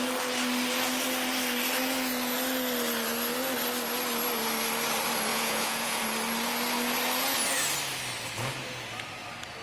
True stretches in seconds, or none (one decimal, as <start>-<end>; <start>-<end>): 0.0-5.3; 6.0-9.6